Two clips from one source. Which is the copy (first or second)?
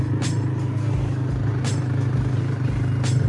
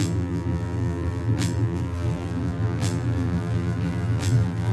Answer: second